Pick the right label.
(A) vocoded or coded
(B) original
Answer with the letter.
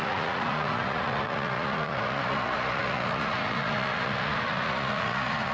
A